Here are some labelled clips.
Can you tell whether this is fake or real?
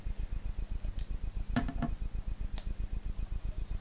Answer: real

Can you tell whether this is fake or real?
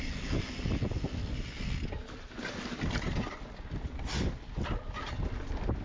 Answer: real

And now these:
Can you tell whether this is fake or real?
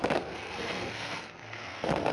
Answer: fake